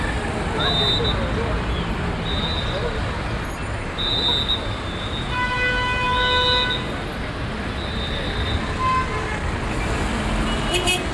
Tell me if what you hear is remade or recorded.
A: recorded